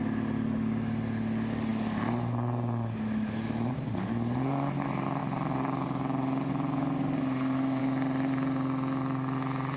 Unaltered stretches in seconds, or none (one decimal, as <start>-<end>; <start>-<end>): 0.0-9.8